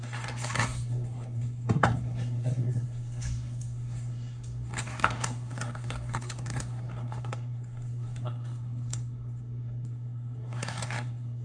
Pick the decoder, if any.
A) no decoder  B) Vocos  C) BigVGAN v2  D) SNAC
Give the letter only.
D